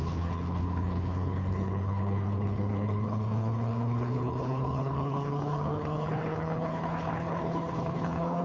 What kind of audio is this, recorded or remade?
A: remade